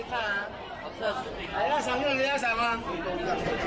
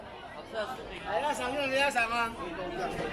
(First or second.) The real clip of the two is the second